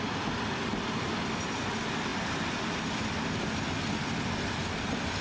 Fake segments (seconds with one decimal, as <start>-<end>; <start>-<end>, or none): none

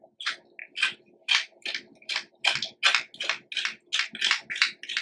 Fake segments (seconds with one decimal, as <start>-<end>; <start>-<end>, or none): 0.6-2.3

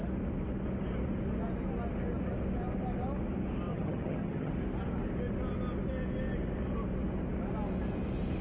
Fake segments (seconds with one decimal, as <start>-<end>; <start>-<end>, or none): 3.7-4.5